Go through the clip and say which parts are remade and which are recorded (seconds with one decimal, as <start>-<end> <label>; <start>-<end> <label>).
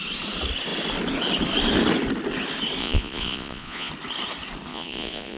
0.0-2.8 recorded; 2.8-3.9 remade; 3.9-4.7 recorded; 4.7-5.4 remade